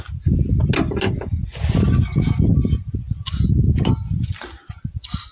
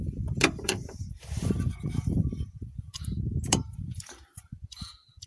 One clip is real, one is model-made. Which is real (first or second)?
first